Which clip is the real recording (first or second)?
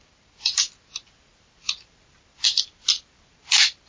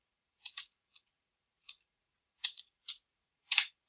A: first